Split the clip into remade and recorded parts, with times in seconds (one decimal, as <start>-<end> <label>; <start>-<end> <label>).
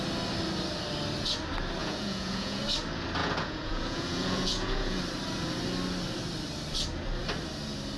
0.0-1.8 recorded; 1.8-2.6 remade; 2.6-3.2 recorded; 3.2-5.0 remade; 5.0-8.0 recorded